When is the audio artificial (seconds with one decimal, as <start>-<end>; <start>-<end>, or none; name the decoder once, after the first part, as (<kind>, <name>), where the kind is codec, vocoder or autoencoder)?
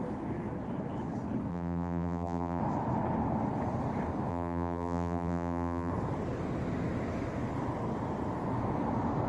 1.5-2.6 (vocoder, BigVGAN v2); 4.3-5.9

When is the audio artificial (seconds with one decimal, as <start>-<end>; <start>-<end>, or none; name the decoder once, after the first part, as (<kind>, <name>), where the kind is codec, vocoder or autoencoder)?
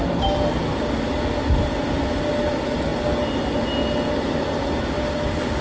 none